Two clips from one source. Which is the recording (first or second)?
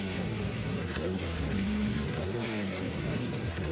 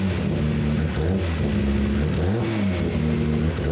second